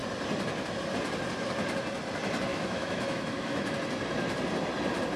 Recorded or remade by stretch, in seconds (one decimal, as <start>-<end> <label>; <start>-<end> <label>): 0.0-2.5 recorded; 2.5-3.8 remade; 3.8-5.2 recorded